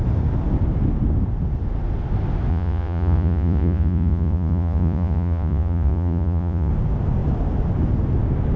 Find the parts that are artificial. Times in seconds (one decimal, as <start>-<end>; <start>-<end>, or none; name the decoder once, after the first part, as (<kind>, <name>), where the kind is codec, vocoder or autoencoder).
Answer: 2.5-6.7 (vocoder, Vocos)